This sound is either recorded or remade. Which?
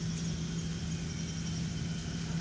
recorded